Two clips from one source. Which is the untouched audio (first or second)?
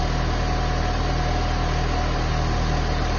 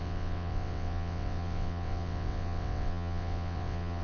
first